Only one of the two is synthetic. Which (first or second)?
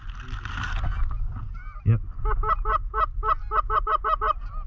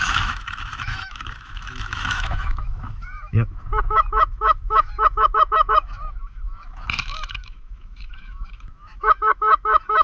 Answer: second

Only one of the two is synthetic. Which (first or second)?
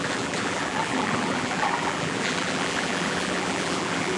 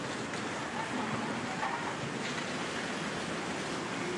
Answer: first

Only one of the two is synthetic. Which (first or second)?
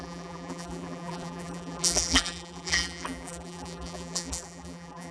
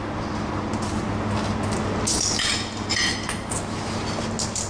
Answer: first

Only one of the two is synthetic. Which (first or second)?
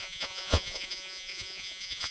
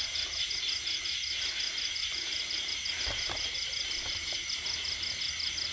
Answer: first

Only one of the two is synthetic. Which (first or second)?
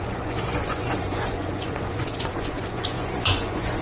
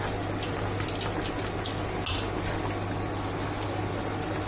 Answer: first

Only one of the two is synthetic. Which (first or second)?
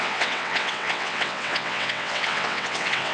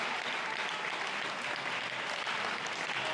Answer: first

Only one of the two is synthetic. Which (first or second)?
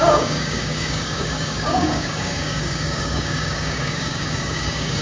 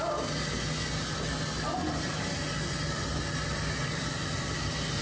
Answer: first